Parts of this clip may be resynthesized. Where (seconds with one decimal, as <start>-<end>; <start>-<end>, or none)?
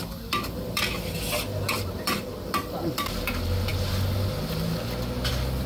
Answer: none